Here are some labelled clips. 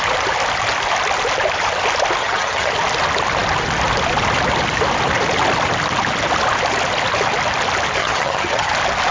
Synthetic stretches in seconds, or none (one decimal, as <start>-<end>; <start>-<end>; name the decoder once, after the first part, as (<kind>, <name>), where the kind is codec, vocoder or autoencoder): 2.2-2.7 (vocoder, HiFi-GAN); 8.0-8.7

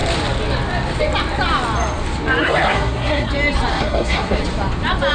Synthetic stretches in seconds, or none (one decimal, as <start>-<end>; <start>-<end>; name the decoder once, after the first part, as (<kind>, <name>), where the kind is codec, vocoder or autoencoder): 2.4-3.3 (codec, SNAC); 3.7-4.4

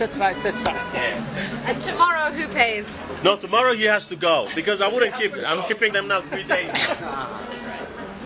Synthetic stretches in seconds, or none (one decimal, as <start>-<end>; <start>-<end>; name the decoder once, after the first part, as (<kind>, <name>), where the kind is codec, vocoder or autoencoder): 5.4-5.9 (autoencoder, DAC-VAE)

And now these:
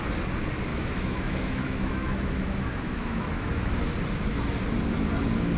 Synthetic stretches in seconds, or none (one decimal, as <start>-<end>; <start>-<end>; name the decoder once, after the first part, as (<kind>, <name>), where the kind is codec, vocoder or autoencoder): 0.7-3.7 (autoencoder, DAC-VAE)

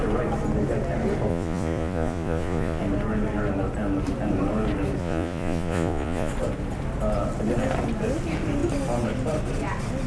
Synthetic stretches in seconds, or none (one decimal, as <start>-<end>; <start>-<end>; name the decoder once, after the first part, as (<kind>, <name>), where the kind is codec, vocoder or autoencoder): 1.3-2.8 (vocoder, Vocos); 5.0-6.3

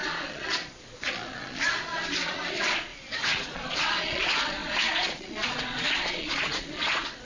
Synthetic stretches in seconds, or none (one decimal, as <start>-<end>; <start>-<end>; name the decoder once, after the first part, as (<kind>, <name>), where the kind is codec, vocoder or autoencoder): 0.0-7.2 (vocoder, Vocos)